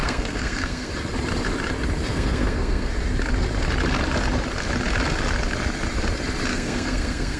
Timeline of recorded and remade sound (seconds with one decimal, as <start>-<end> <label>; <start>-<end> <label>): 0.0-0.9 remade; 0.9-2.1 recorded; 2.1-2.9 remade; 2.9-6.5 recorded; 6.5-7.4 remade